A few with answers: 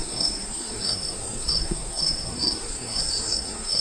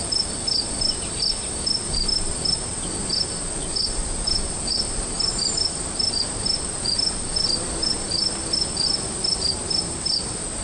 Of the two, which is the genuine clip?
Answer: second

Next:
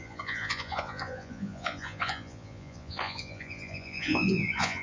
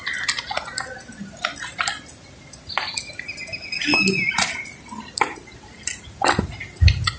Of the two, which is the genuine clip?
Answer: second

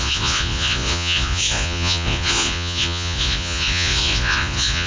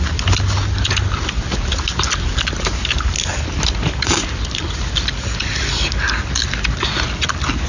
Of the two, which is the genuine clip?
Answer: second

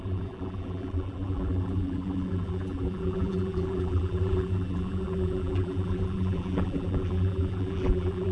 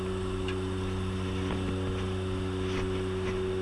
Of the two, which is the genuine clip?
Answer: second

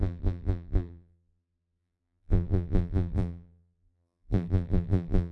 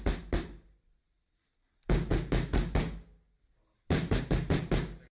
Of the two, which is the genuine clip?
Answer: second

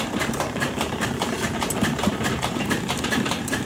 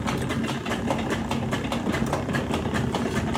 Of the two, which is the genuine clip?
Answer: second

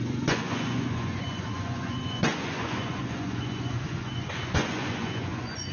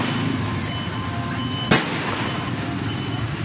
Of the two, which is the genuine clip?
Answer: second